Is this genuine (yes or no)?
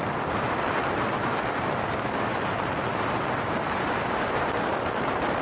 no